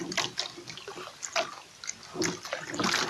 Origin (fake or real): real